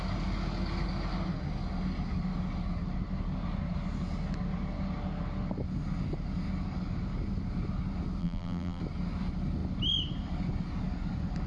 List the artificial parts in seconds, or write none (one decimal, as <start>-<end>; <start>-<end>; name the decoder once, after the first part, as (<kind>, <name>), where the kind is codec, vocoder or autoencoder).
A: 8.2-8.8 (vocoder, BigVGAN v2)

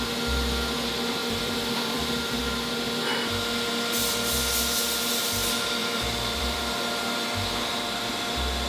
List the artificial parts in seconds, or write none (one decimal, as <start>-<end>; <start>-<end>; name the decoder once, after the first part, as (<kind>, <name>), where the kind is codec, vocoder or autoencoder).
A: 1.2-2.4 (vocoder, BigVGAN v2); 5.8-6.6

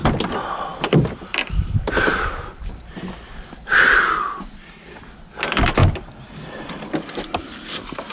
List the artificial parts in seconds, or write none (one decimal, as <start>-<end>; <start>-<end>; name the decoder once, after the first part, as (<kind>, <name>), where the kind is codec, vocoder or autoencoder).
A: 0.7-4.5 (vocoder, BigVGAN v2); 5.8-6.8